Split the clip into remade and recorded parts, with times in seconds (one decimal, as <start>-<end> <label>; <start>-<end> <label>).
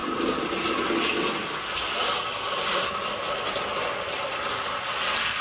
0.0-5.4 recorded